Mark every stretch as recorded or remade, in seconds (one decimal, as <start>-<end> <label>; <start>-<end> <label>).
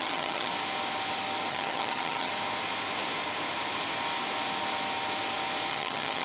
0.0-0.5 remade; 0.5-1.5 recorded; 1.5-2.3 remade; 2.3-5.7 recorded; 5.7-6.2 remade